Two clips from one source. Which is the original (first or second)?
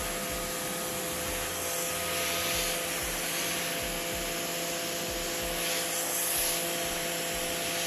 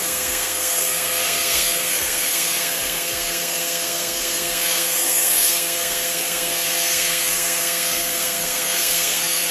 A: first